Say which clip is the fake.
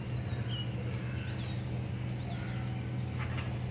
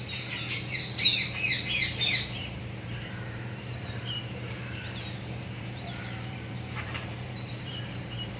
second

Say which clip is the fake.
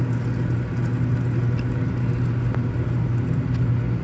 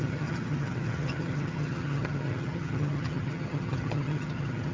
second